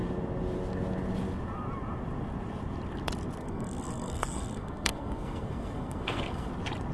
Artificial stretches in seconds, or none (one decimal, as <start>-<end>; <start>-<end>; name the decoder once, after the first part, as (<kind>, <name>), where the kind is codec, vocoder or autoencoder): 3.4-6.5 (codec, SNAC)